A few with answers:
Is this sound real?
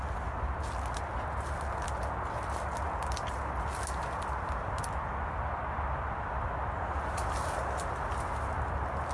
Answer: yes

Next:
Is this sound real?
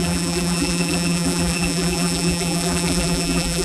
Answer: no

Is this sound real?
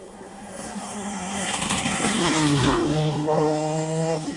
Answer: no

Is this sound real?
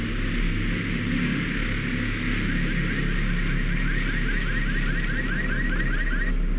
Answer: yes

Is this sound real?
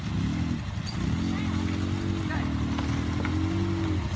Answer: yes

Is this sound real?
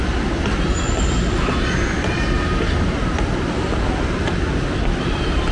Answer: yes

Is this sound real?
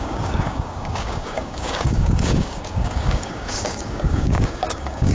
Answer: no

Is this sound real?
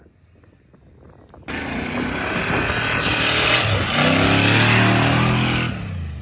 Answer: yes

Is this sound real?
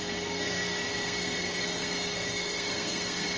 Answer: no